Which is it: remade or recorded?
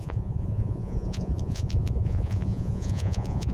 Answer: remade